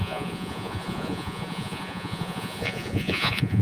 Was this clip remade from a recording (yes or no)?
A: yes